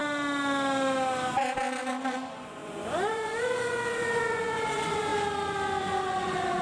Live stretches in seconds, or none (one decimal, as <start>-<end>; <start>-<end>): 0.0-2.0; 5.1-5.8

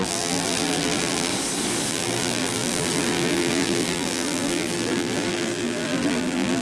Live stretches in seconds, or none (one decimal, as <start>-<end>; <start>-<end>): 1.3-1.9

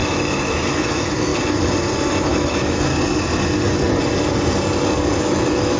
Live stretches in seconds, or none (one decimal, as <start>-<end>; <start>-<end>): 1.3-2.2; 2.9-5.2

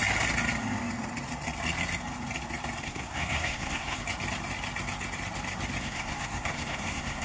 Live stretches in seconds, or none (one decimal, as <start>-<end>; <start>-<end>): 0.0-2.8; 4.0-5.8

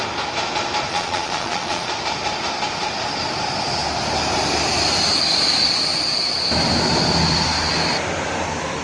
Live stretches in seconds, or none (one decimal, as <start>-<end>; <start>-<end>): 0.0-0.9; 1.9-8.8

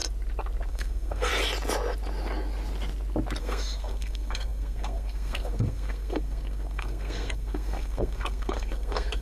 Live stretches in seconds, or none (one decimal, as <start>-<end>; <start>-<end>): 0.0-0.7; 1.3-3.4

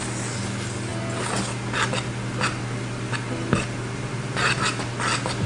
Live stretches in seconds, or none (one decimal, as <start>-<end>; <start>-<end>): 0.0-5.5